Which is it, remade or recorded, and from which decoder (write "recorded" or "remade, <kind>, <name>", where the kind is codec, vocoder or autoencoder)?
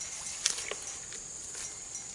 recorded